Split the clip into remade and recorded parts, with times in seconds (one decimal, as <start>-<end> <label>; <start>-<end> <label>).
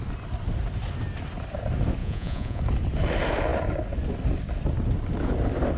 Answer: 0.0-2.0 recorded; 2.0-2.6 remade; 2.6-5.8 recorded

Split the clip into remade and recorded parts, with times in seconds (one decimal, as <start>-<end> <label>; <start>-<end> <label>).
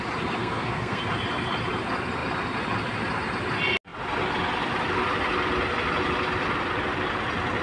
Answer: 0.0-0.4 recorded; 0.4-1.0 remade; 1.0-7.6 recorded